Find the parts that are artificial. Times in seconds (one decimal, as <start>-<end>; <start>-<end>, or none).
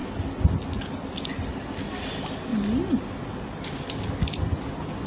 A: none